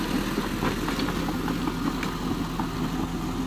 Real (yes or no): yes